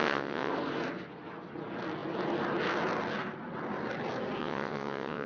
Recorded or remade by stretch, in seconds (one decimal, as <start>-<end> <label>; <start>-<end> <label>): 0.0-0.5 remade; 0.5-4.4 recorded; 4.4-5.3 remade

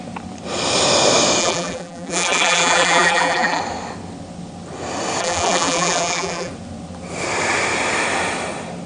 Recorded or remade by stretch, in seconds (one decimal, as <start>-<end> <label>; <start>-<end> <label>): 0.0-1.4 recorded; 1.4-3.6 remade; 3.6-5.2 recorded; 5.2-6.5 remade; 6.5-8.9 recorded